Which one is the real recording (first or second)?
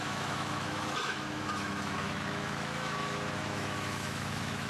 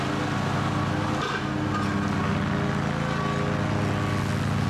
second